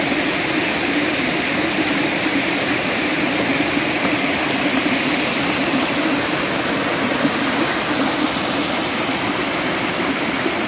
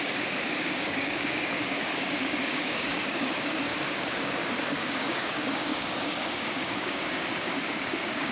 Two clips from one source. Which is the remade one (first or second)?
second